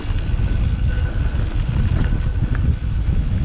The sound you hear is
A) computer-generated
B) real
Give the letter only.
B